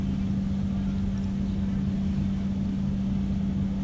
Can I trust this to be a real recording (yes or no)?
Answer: yes